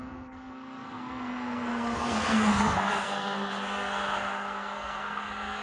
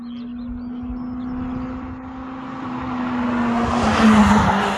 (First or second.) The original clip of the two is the second